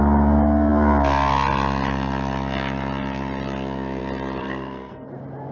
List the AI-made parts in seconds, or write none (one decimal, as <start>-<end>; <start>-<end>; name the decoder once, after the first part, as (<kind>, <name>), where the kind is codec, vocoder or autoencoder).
4.4-5.1 (codec, SNAC)